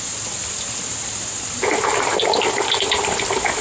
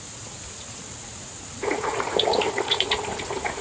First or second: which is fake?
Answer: second